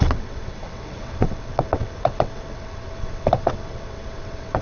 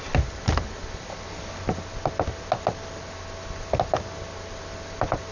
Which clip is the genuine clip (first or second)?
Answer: second